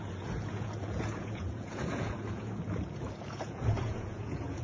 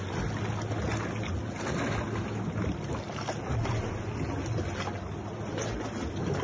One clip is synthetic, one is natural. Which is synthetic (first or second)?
first